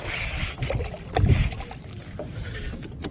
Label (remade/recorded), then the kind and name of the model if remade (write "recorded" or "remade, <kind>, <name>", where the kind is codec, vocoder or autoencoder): recorded